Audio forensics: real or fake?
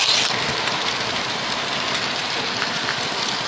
real